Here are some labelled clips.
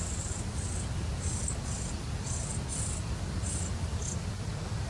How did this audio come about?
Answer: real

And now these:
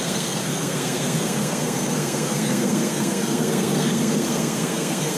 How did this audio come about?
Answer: fake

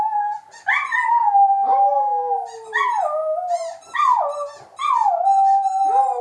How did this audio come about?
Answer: real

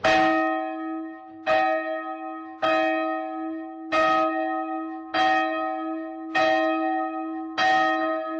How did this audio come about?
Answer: real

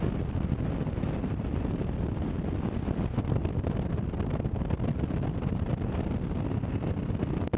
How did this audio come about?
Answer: real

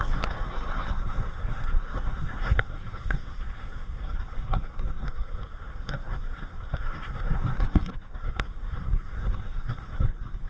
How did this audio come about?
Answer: fake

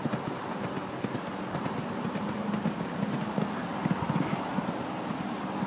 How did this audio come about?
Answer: real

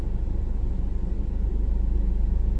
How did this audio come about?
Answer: real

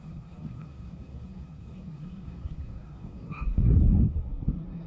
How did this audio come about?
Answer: fake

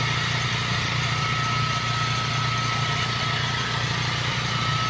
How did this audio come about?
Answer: real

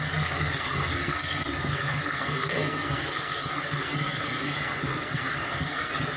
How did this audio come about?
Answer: fake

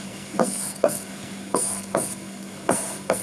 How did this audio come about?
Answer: fake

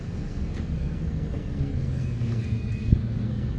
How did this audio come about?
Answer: fake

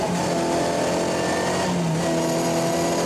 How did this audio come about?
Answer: real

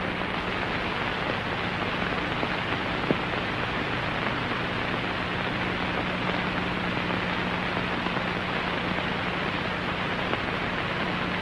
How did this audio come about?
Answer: real